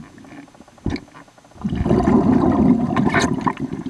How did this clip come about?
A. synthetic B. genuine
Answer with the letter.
B